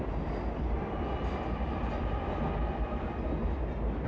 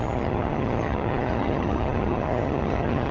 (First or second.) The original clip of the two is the first